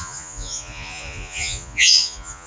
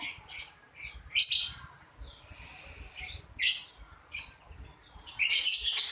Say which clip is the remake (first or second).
first